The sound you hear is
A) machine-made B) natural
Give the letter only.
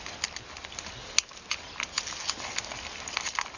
B